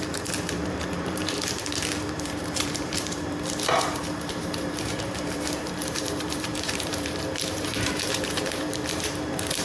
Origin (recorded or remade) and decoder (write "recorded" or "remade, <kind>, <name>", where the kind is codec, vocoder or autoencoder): remade, vocoder, BigVGAN v2